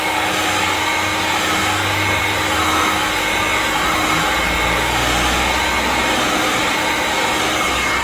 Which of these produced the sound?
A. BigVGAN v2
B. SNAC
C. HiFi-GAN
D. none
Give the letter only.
D